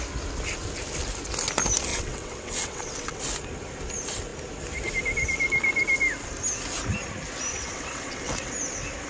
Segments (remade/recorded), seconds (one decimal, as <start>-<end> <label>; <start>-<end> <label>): 0.0-1.9 recorded; 1.9-3.2 remade; 3.2-7.5 recorded; 7.5-8.5 remade; 8.5-9.1 recorded